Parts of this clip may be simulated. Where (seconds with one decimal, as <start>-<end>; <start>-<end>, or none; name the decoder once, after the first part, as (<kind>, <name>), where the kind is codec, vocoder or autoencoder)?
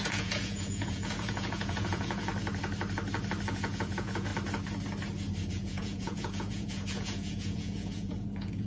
0.0-2.3 (vocoder, Vocos); 3.5-4.3; 5.5-8.7